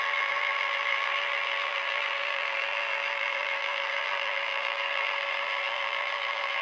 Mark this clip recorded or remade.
remade